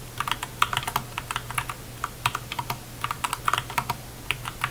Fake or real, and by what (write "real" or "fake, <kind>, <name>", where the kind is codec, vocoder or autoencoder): real